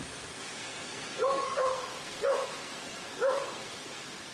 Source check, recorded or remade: remade